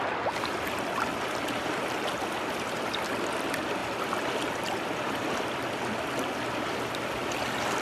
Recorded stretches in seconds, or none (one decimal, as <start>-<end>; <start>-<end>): 0.0-3.8; 5.6-7.8